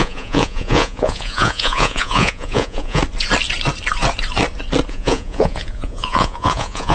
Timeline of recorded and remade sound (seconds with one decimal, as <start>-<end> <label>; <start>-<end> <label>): 0.0-3.0 remade; 3.0-4.9 recorded; 4.9-6.9 remade

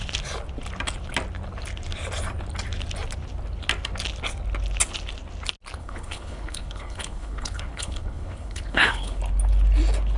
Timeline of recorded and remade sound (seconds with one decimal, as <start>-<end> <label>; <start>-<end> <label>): 0.0-5.8 recorded; 5.8-9.2 remade; 9.2-10.2 recorded

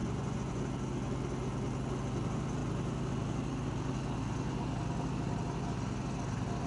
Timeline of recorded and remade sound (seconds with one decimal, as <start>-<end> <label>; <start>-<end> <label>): 0.0-0.6 remade; 0.6-6.7 recorded

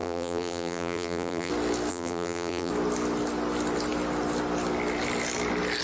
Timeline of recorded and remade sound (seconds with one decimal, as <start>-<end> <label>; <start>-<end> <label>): 0.0-1.5 remade; 1.5-1.9 recorded; 1.9-2.7 remade; 2.7-5.8 recorded